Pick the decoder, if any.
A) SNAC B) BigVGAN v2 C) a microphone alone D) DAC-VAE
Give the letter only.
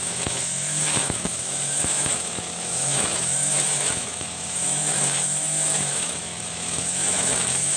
D